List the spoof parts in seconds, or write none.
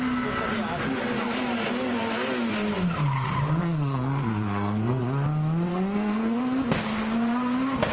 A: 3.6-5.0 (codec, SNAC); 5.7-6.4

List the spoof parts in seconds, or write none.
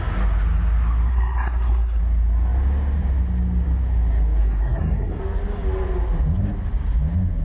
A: 1.1-2.0 (codec, SNAC); 4.4-5.2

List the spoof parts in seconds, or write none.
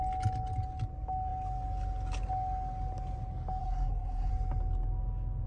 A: 3.6-4.3 (codec, SNAC)